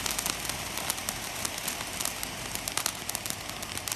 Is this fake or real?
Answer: real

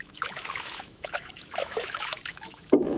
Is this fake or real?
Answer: fake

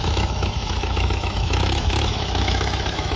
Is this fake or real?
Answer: fake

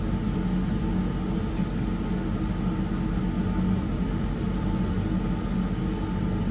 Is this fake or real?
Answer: real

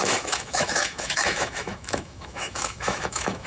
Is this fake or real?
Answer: fake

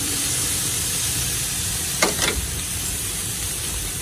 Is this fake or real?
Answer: real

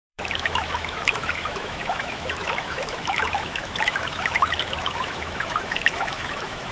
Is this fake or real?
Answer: fake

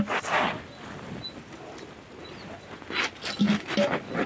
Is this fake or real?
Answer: real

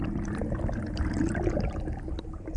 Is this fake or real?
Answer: real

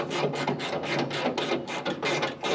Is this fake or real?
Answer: real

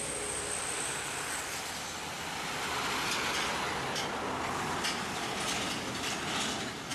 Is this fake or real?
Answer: real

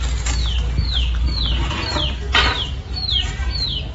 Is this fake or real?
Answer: real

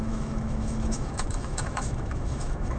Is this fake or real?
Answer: fake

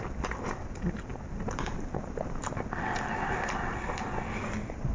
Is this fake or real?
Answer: real